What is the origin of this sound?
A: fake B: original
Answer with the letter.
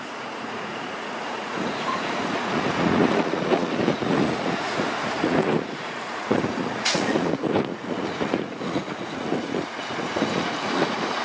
A